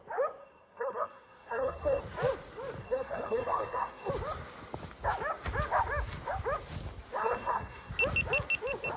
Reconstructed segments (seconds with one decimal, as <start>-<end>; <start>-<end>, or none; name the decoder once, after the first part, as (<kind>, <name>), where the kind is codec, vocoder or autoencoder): 0.4-2.0 (codec, SNAC); 2.8-4.1; 7.2-7.9